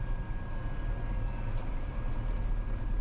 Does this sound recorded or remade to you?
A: recorded